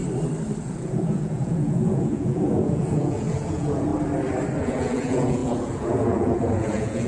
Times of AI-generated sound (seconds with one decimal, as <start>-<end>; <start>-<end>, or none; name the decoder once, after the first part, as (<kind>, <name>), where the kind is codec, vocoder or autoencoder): 0.6-3.9 (vocoder, Vocos); 4.6-7.1